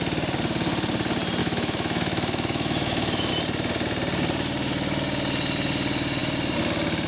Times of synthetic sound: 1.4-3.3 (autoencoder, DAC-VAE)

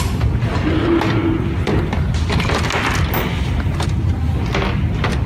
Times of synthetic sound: 3.3-4.3 (vocoder, BigVGAN v2)

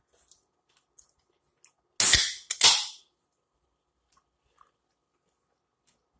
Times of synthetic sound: none